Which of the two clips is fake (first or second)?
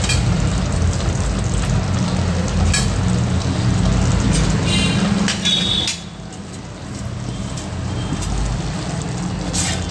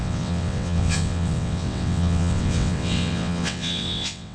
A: second